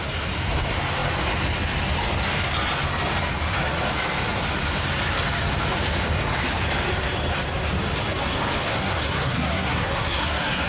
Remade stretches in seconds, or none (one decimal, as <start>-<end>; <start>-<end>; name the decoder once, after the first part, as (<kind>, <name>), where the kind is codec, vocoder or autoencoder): 8.7-10.7 (codec, SNAC)